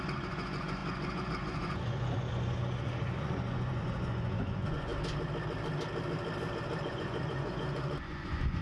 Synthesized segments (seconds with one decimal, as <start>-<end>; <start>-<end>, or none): 0.0-4.9; 6.9-8.6